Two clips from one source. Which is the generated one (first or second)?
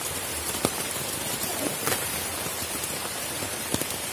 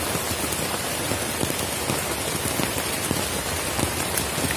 first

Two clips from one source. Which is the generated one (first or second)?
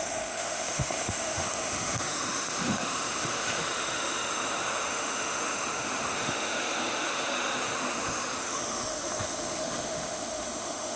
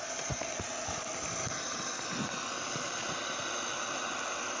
first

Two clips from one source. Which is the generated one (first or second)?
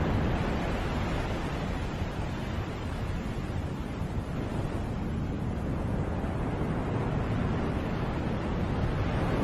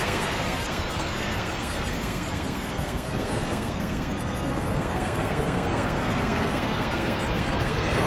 second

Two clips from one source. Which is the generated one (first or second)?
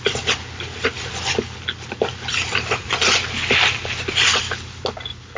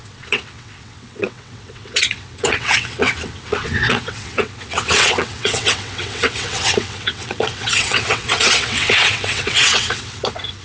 second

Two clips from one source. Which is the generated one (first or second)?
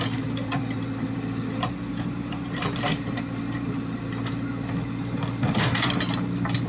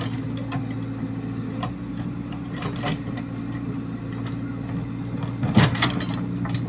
first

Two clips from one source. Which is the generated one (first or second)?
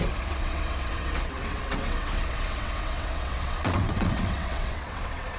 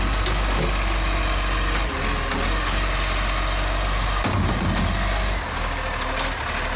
first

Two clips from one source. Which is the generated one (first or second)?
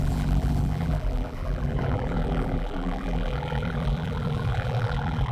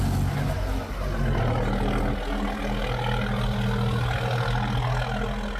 first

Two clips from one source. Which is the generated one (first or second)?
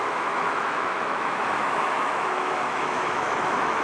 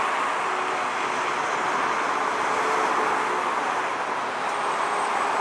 first